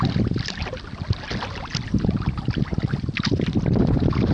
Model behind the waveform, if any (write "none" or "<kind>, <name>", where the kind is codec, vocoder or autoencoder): none